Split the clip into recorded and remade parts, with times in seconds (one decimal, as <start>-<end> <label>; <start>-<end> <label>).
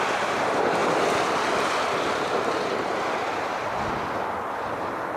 0.0-5.2 recorded